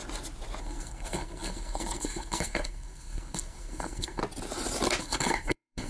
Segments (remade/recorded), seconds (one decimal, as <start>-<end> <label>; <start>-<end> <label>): 0.0-0.6 recorded; 0.6-4.2 remade; 4.2-5.0 recorded; 5.0-5.9 remade